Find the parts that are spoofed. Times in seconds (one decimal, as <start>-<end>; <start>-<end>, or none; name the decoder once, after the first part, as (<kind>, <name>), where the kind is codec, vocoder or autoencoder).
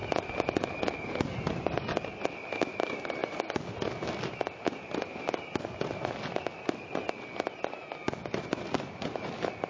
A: none